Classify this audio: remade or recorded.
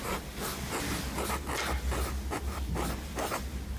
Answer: recorded